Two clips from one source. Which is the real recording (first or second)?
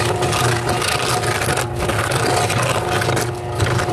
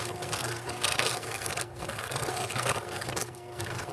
first